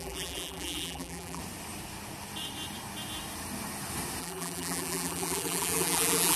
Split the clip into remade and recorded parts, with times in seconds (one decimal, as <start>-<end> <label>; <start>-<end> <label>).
0.0-1.4 remade; 1.4-4.2 recorded; 4.2-6.4 remade